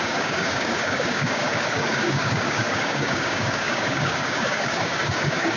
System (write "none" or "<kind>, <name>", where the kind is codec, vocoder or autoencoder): codec, DAC